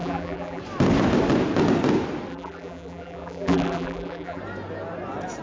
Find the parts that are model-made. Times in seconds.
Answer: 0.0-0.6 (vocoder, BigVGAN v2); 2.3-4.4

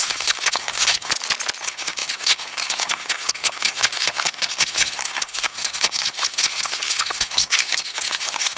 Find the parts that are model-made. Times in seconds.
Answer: 0.0-1.1 (codec, SNAC); 1.6-8.6

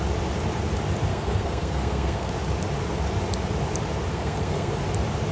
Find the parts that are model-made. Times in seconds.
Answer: 1.1-2.3 (codec, SNAC); 4.1-4.7

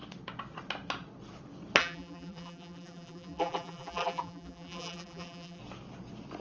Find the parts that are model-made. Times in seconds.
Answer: 1.8-5.6 (vocoder, BigVGAN v2)

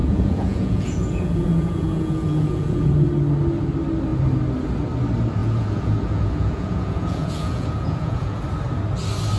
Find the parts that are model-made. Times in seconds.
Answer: 0.0-2.9 (vocoder, Vocos); 5.4-8.4

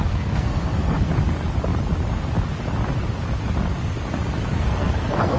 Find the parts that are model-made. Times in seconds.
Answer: 0.0-1.1 (codec, SNAC); 4.5-5.4

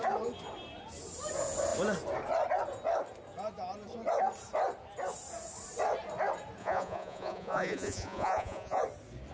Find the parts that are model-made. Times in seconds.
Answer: 6.6-8.8 (vocoder, Vocos)

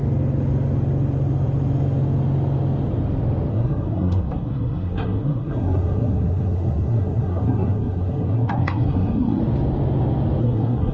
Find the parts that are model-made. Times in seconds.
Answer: 3.5-9.4 (codec, SNAC); 10.4-10.9